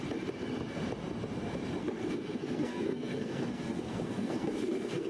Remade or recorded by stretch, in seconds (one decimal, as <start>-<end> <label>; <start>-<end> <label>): 0.0-1.8 recorded; 1.8-5.1 remade